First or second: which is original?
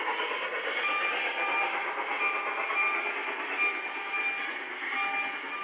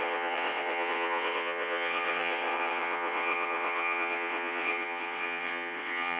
first